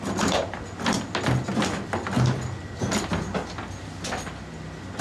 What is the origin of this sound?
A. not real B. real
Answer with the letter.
B